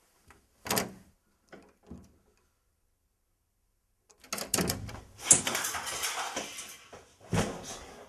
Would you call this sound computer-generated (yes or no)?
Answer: no